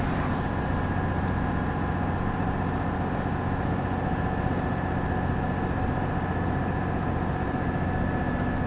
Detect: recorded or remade recorded